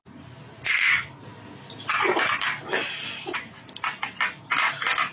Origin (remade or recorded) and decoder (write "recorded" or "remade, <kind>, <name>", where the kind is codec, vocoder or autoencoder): recorded